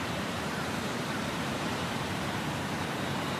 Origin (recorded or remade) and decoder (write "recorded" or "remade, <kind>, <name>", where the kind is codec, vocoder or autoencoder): remade, vocoder, BigVGAN v2